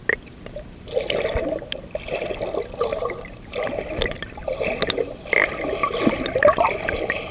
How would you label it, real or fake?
real